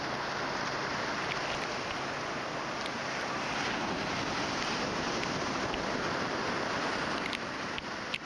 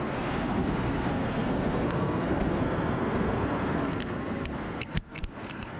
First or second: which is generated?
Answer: second